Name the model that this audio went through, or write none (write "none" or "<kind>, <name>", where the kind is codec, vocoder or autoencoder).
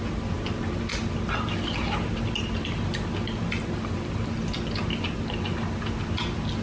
none